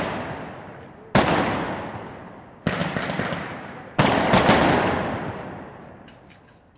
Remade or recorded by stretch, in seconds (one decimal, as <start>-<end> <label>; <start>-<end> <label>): 0.0-2.8 recorded; 2.8-6.1 remade; 6.1-6.8 recorded